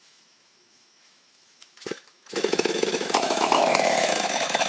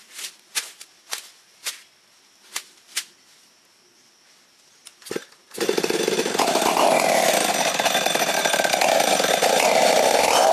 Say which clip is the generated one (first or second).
first